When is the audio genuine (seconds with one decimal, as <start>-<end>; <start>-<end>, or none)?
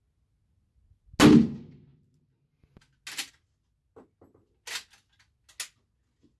0.0-6.4